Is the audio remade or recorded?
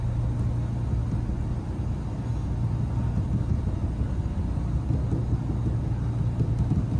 recorded